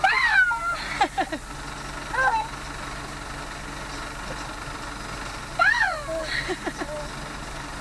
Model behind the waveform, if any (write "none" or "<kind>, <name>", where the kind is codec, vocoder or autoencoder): none